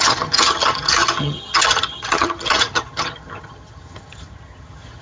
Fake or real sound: fake